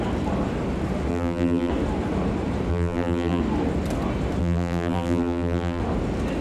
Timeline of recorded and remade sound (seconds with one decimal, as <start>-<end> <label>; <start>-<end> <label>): 0.0-1.1 recorded; 1.1-1.7 remade; 1.7-2.7 recorded; 2.7-3.4 remade; 3.4-4.4 recorded; 4.4-5.8 remade; 5.8-6.4 recorded